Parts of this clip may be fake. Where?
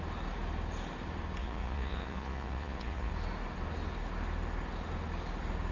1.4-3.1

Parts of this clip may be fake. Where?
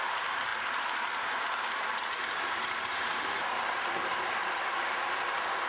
none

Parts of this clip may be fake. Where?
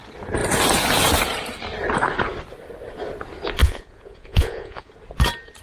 3.6-4.9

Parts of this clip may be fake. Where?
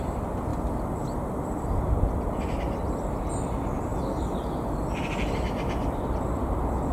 0.5-1.8; 3.9-6.0